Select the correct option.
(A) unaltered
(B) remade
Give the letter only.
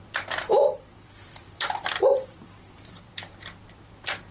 B